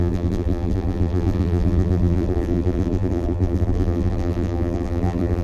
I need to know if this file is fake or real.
fake